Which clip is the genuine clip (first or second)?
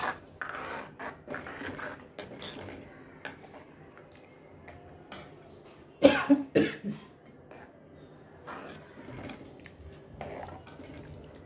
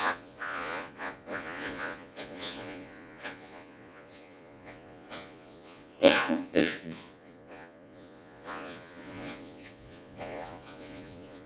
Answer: first